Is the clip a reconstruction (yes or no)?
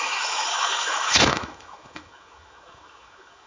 yes